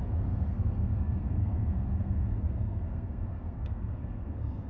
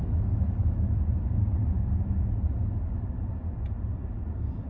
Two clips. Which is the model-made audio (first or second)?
first